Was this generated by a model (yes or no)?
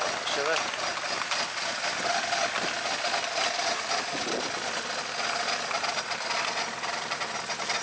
no